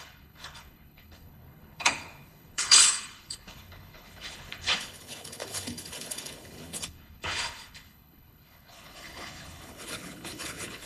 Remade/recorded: remade